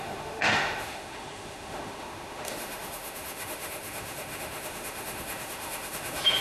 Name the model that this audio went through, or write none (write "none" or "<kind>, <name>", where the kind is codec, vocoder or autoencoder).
autoencoder, DAC-VAE